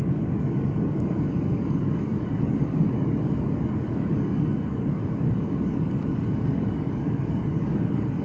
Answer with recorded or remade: remade